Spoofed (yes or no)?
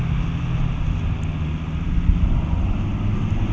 no